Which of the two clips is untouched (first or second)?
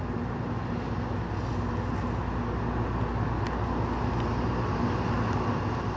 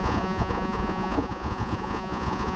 first